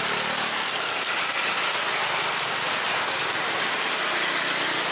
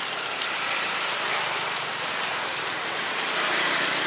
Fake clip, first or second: second